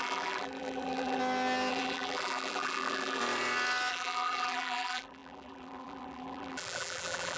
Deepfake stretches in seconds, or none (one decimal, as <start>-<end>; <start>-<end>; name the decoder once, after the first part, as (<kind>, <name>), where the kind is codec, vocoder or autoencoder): 0.0-1.2 (vocoder, BigVGAN v2); 1.7-3.2; 3.9-7.4